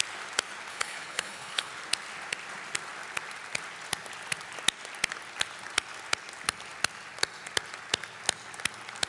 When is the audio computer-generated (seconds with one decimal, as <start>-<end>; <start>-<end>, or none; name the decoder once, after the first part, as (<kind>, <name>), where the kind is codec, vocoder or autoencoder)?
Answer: 0.7-1.7 (codec, HILCodec)

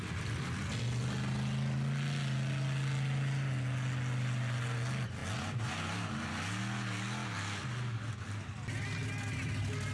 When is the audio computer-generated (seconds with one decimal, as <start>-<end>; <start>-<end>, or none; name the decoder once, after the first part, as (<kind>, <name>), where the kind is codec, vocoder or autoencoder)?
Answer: none

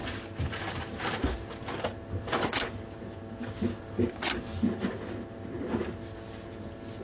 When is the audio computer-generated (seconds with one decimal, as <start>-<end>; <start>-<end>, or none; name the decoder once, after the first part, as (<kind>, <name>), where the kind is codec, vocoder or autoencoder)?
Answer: none

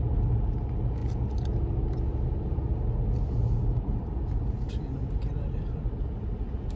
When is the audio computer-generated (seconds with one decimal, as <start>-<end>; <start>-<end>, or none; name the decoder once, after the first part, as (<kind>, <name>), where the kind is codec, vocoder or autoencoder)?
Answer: none

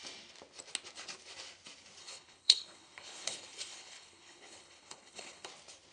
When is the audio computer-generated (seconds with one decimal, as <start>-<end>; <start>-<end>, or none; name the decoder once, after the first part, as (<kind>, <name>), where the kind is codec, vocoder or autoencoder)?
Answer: 2.0-5.5 (codec, HILCodec)